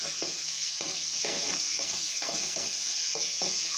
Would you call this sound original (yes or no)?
no